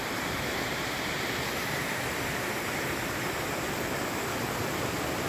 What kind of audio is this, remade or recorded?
remade